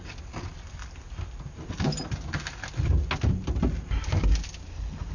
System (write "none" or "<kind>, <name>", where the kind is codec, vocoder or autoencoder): none